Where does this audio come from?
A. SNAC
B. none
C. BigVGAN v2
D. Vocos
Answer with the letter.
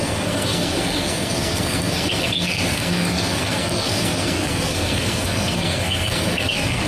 A